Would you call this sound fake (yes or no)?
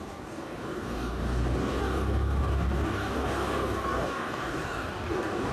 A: yes